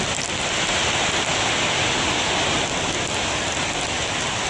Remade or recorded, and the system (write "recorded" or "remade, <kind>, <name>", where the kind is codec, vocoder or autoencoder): recorded